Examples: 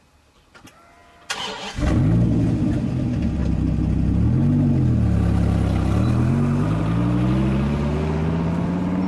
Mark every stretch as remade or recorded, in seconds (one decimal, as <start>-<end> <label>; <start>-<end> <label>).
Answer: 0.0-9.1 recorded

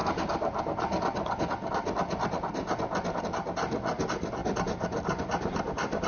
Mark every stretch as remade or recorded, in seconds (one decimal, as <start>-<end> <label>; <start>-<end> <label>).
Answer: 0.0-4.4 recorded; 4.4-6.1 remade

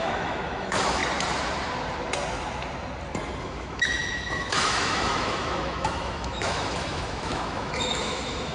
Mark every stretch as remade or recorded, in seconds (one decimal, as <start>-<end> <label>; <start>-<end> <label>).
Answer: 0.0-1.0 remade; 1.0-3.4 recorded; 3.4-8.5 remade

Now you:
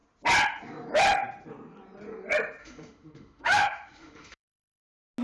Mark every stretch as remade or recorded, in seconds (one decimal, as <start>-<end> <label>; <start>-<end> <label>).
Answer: 0.0-2.6 recorded; 2.6-4.8 remade; 4.8-5.2 recorded